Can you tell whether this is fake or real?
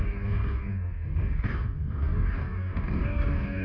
fake